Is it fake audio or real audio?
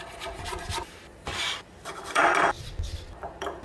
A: fake